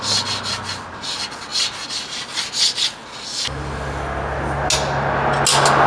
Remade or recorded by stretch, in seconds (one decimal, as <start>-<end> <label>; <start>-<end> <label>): 0.0-5.9 recorded